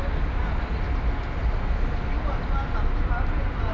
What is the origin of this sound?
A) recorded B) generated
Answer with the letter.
A